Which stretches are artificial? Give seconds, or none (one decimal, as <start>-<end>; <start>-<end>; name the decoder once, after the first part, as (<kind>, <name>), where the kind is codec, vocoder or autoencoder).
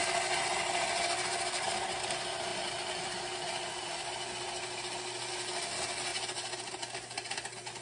none